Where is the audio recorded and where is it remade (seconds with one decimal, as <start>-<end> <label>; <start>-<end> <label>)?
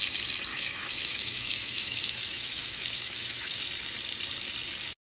0.0-0.5 recorded; 0.5-3.6 remade; 3.6-5.1 recorded